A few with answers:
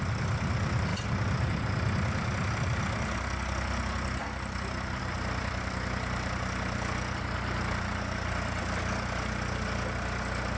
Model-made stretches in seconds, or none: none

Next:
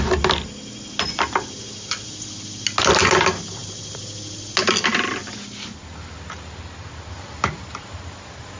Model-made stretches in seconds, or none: none

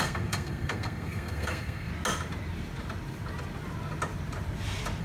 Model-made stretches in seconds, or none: 0.0-1.9 (codec, SNAC)

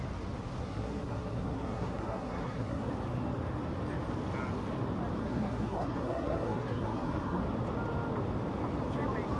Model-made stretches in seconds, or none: 0.6-2.9 (codec, SNAC); 5.2-7.4

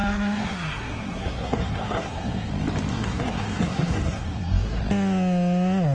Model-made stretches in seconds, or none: 0.0-2.5 (codec, SNAC); 2.9-4.8

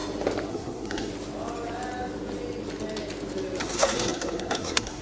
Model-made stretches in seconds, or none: 0.5-1.1 (codec, SNAC); 3.6-5.0

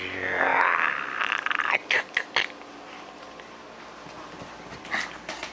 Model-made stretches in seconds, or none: none

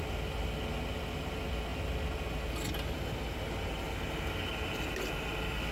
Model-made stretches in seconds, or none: none